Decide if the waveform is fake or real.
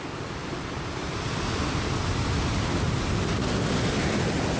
real